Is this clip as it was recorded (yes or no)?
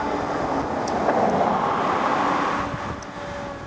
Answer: yes